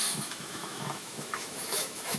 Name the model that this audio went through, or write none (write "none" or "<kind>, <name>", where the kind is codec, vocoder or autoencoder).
autoencoder, DAC-VAE